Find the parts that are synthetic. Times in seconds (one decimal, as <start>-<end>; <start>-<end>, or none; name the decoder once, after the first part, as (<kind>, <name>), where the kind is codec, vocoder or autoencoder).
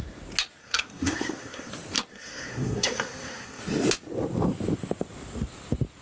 0.6-1.7 (codec, SNAC); 2.1-3.6